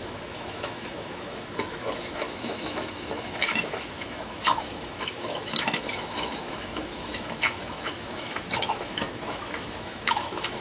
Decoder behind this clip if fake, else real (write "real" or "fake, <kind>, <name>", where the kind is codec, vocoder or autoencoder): fake, autoencoder, DAC-VAE